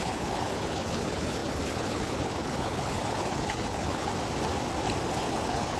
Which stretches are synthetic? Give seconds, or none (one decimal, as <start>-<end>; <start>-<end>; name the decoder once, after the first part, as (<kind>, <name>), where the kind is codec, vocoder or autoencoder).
0.0-4.1 (codec, HILCodec); 5.2-5.8